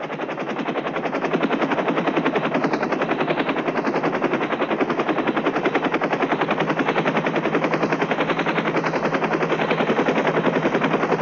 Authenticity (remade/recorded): recorded